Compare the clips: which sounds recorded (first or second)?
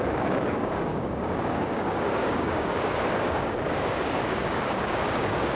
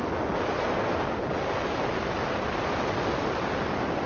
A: second